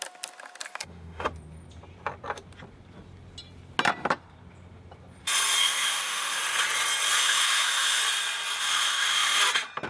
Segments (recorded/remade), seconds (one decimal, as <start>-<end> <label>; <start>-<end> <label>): 0.0-0.8 recorded; 0.8-1.3 remade; 1.3-5.6 recorded; 5.6-6.4 remade; 6.4-7.2 recorded; 7.2-8.0 remade; 8.0-8.6 recorded; 8.6-9.4 remade; 9.4-9.9 recorded